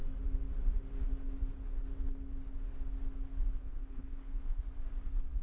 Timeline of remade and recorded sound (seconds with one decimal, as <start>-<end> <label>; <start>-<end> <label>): 0.0-3.5 recorded; 3.5-4.6 remade; 4.6-5.4 recorded